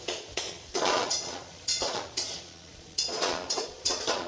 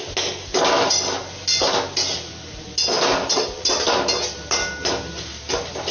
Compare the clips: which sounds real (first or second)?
second